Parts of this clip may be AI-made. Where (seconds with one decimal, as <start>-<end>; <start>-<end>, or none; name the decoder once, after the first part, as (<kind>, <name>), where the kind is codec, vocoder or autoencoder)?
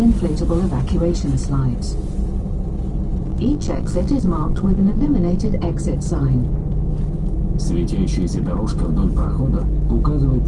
3.3-5.6 (vocoder, BigVGAN v2)